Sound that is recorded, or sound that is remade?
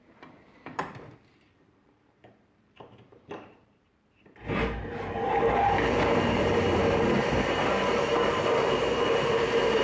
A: remade